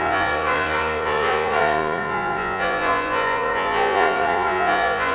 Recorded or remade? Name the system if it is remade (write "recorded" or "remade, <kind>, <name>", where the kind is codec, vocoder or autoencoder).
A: remade, vocoder, Vocos